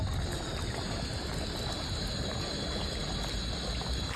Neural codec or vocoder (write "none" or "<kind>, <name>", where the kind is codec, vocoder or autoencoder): none